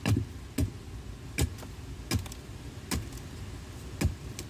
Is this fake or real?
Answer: real